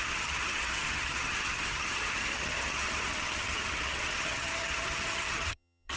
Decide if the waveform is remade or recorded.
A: remade